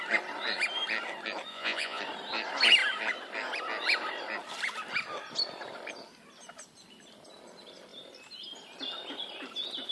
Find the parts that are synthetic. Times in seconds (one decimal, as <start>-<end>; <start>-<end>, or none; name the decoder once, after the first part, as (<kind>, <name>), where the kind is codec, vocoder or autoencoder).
1.5-2.0 (vocoder, Vocos)